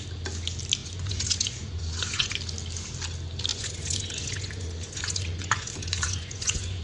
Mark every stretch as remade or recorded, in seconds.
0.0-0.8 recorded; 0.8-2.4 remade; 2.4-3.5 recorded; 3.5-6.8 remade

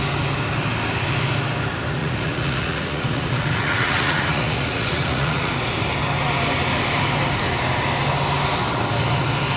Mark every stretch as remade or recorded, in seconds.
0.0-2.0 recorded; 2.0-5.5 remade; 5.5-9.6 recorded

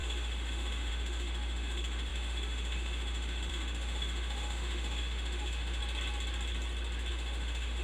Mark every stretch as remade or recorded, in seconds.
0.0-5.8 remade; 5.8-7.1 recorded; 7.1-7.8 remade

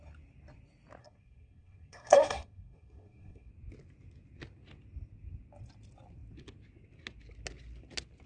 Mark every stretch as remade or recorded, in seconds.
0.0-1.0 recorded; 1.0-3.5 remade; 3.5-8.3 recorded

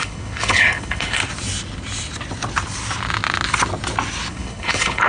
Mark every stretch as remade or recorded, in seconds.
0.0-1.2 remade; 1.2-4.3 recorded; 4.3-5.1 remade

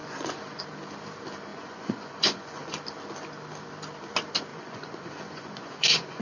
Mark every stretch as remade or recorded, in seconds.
0.0-0.6 remade; 0.6-1.5 recorded; 1.5-2.7 remade; 2.7-4.5 recorded; 4.5-6.2 remade

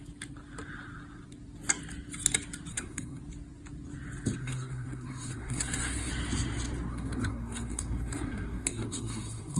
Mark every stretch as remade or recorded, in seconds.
0.0-2.7 recorded; 2.7-3.2 remade; 3.2-4.4 recorded; 4.4-6.1 remade; 6.1-6.9 recorded; 6.9-9.6 remade

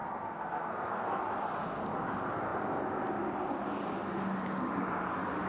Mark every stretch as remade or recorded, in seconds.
0.0-1.2 remade; 1.2-5.5 recorded